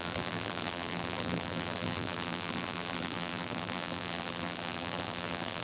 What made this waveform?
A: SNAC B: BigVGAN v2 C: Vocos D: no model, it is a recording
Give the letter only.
B